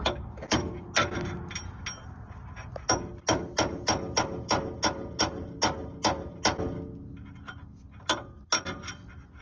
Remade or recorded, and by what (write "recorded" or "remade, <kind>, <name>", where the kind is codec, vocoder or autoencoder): recorded